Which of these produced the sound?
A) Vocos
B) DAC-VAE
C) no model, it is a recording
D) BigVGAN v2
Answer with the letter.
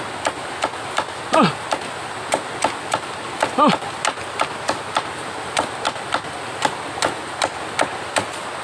C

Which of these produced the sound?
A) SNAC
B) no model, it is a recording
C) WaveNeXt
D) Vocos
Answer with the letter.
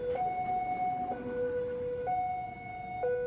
B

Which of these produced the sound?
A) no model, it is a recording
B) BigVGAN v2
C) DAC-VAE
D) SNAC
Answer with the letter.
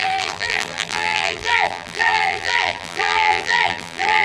B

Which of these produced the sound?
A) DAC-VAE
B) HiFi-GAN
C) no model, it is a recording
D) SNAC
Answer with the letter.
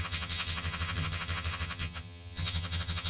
B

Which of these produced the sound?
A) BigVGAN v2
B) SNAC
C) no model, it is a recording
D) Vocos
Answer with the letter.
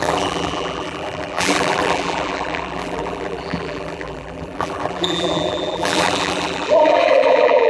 A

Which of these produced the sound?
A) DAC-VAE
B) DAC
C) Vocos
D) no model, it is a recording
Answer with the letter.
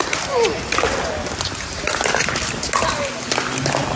D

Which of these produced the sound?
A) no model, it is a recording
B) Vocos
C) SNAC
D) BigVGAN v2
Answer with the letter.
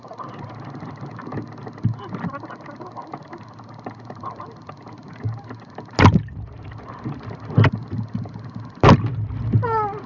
A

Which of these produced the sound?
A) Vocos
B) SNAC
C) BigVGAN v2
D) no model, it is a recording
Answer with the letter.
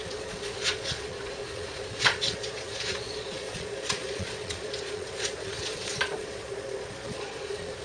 A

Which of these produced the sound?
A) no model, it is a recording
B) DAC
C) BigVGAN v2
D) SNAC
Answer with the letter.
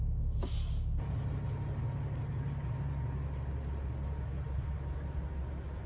A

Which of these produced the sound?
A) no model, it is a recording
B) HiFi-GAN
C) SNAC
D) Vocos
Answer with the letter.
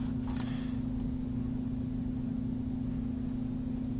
A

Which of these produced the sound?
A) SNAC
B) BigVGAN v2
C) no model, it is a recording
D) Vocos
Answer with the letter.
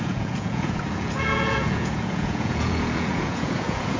D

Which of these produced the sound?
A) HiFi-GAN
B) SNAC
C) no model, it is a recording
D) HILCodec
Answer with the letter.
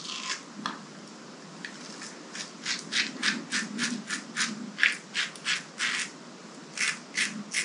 C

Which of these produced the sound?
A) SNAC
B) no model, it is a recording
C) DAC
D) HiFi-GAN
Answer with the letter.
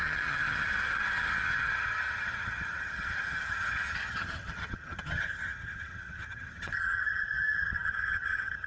D